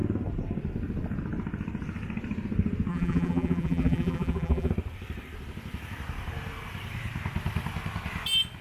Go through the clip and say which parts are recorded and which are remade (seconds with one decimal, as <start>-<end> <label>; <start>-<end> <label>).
0.0-2.9 recorded; 2.9-4.7 remade; 4.7-8.6 recorded